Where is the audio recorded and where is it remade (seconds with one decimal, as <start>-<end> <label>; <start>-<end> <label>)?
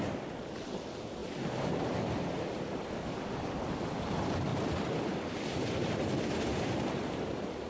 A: 0.0-1.2 recorded; 1.2-2.9 remade; 2.9-4.5 recorded; 4.5-7.7 remade